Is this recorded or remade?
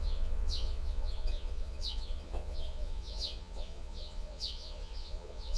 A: remade